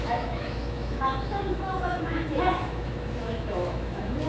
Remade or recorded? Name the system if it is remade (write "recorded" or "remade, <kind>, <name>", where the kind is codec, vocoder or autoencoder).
remade, autoencoder, DAC-VAE